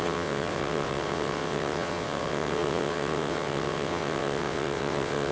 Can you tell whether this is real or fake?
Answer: fake